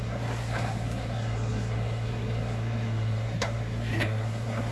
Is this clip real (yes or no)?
no